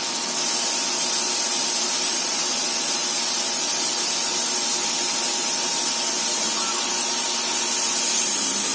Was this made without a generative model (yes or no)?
yes